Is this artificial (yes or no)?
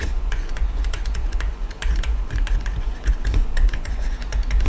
yes